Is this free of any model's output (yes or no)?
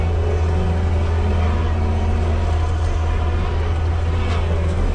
yes